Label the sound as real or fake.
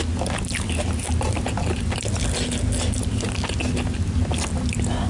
real